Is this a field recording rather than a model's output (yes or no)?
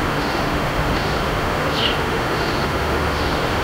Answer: no